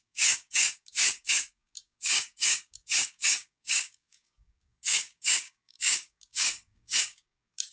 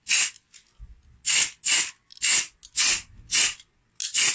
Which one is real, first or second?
second